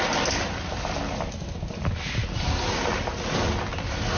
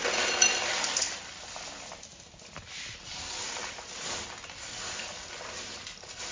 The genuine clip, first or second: first